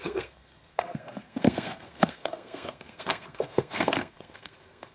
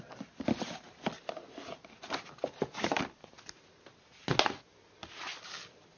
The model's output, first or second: first